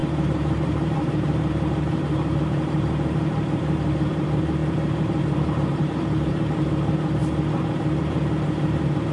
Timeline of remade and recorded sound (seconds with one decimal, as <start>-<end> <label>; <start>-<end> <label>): 0.0-7.2 remade; 7.2-8.0 recorded; 8.0-9.1 remade